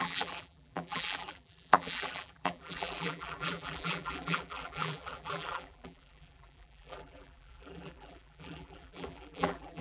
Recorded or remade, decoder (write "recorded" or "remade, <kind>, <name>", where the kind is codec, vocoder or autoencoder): remade, vocoder, BigVGAN v2